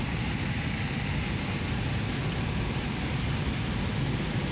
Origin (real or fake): real